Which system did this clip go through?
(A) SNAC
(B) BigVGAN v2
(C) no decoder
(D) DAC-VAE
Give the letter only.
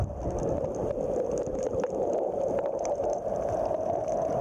C